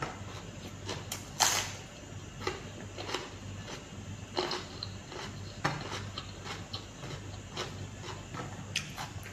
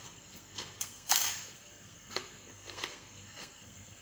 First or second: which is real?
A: first